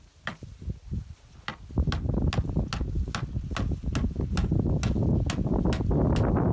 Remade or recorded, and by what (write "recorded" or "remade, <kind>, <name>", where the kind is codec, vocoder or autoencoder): recorded